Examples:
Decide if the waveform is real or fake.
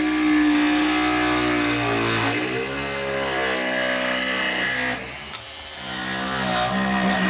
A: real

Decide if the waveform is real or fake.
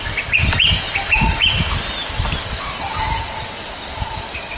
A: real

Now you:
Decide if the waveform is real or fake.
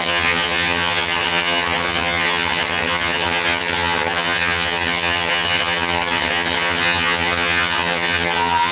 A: fake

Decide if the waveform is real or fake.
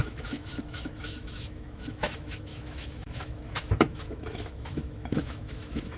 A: fake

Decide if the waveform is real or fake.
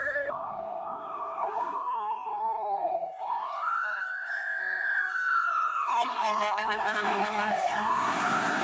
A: fake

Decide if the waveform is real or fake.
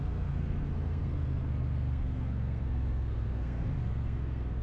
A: fake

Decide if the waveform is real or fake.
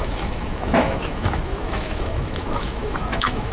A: fake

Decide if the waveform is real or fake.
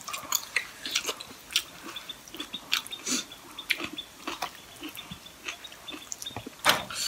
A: real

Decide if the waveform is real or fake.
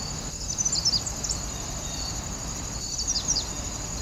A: real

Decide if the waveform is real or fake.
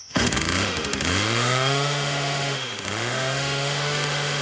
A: fake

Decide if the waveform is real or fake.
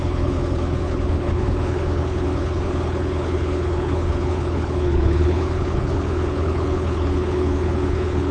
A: fake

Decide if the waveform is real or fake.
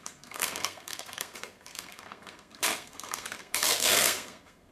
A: fake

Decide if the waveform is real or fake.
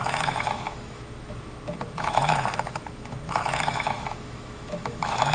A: fake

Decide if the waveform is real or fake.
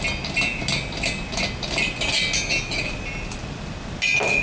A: real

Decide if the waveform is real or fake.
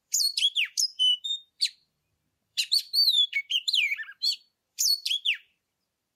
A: fake